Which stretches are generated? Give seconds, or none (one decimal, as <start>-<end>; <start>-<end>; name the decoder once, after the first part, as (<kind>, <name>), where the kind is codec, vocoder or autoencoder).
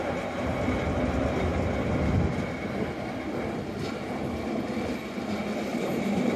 5.7-6.4 (vocoder, BigVGAN v2)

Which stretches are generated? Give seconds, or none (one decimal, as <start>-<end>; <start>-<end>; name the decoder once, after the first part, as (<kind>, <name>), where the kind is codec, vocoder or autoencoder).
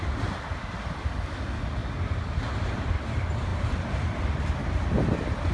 1.8-2.4 (vocoder, BigVGAN v2); 3.5-4.4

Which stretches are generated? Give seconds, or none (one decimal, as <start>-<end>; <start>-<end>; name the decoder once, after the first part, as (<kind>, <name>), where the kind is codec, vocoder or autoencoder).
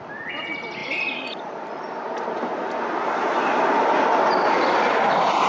none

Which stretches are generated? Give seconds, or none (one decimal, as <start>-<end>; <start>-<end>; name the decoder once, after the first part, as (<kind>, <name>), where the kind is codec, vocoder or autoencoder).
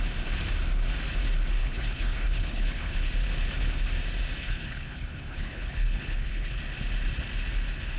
1.6-3.1 (codec, HILCodec); 4.4-6.6